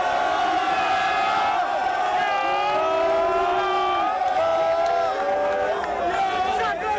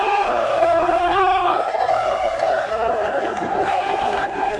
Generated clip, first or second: second